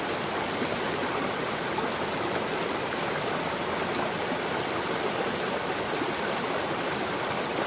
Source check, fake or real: real